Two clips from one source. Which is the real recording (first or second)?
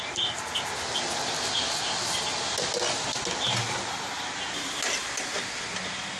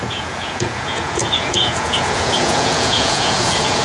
first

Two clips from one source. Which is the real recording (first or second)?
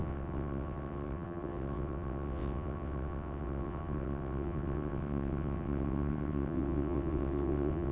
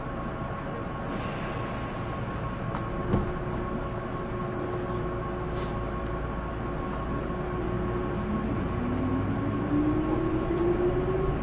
second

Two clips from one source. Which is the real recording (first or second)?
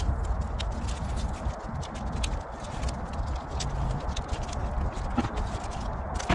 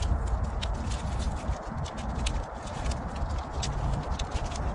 first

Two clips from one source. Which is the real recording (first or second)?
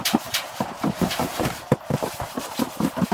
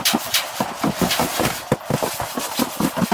second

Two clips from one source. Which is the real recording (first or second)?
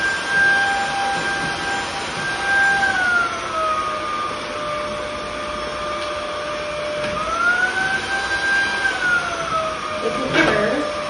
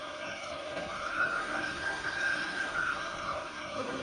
first